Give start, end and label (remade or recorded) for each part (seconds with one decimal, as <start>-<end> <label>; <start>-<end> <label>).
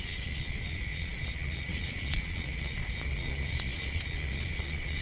0.0-5.0 remade